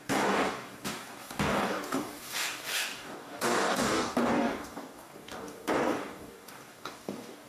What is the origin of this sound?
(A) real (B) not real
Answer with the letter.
B